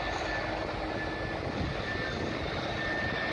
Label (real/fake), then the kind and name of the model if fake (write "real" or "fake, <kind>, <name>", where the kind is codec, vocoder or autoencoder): real